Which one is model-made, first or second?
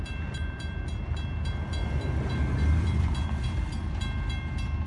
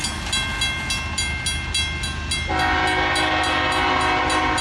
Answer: first